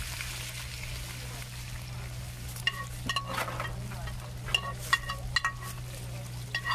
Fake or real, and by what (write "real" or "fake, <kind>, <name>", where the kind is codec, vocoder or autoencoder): real